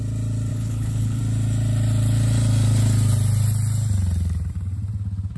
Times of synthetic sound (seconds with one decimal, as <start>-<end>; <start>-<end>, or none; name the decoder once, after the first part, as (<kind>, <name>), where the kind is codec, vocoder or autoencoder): 0.5-1.2 (codec, HILCodec)